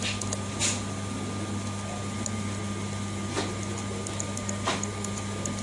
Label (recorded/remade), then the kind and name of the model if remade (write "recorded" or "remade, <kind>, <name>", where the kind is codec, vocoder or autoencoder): recorded